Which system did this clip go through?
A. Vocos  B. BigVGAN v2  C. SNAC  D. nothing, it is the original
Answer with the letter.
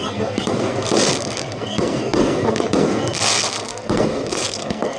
C